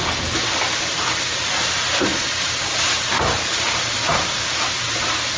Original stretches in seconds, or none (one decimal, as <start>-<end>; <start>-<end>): 0.0-5.4